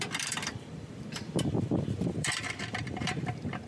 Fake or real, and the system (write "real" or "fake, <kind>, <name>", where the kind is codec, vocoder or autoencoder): fake, vocoder, BigVGAN v2